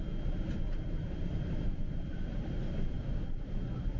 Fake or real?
fake